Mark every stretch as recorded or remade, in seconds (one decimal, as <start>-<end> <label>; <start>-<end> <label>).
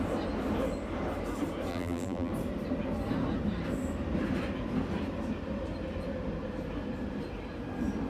0.0-1.7 recorded; 1.7-2.3 remade; 2.3-8.1 recorded